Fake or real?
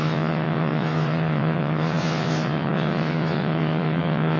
fake